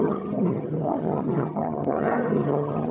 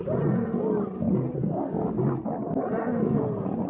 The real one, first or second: second